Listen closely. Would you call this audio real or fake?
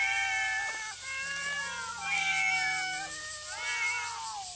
real